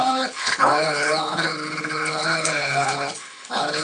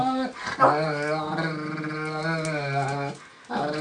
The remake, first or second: first